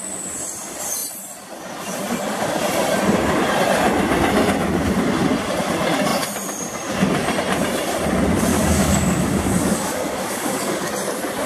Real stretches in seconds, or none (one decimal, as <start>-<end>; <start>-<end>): 0.0-8.5; 10.9-11.5